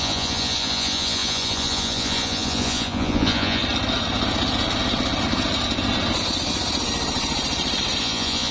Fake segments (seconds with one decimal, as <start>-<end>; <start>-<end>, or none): 0.0-3.6; 8.0-8.5